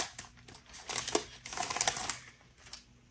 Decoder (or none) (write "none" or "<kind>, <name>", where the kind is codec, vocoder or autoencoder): none